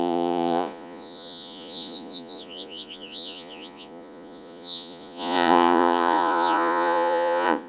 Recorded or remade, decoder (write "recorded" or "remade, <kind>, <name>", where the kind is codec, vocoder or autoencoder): remade, vocoder, Vocos